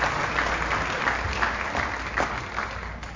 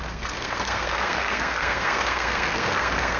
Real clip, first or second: first